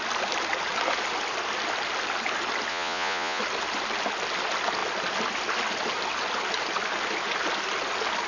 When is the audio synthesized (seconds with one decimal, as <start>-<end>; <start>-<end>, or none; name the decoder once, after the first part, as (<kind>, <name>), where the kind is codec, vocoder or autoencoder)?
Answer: 2.7-3.4 (vocoder, Vocos)